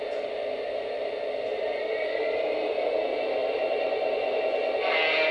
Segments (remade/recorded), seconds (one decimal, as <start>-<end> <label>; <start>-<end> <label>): 0.0-1.5 recorded; 1.5-2.7 remade; 2.7-3.4 recorded; 3.4-4.4 remade; 4.4-5.3 recorded